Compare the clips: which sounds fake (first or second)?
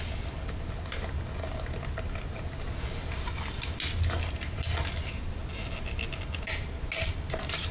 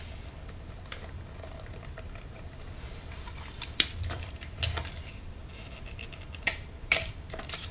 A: second